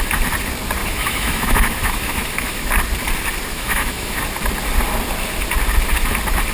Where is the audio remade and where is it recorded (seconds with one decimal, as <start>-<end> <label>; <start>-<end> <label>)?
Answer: 0.0-0.8 recorded; 0.8-2.7 remade; 2.7-3.5 recorded; 3.5-4.2 remade; 4.2-6.5 recorded